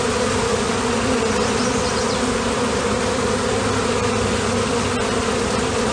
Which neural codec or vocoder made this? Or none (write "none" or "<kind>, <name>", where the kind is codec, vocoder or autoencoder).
none